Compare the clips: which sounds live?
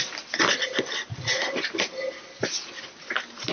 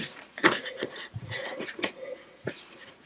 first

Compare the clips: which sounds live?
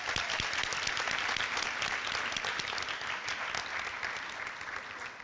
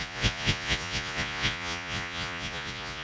first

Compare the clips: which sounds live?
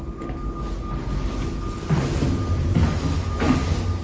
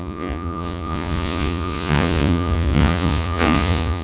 first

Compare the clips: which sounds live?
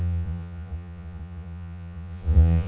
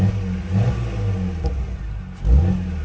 second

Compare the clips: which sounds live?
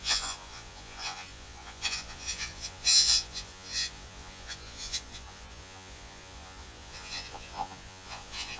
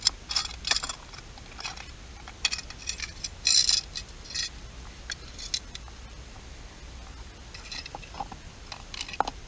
second